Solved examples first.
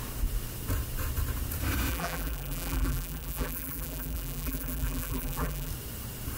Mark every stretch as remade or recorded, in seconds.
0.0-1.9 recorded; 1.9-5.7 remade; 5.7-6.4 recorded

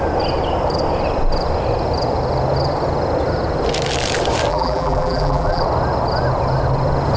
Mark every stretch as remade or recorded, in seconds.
0.0-4.5 recorded; 4.5-5.6 remade; 5.6-7.2 recorded

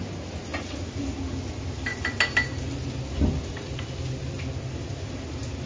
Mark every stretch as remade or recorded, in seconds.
0.0-5.7 recorded

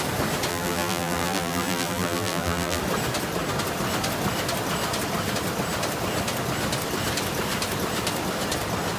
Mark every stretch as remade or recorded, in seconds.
0.0-0.5 recorded; 0.5-2.8 remade; 2.8-9.0 recorded